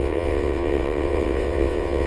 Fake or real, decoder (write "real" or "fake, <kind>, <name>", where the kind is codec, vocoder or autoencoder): fake, vocoder, WaveNeXt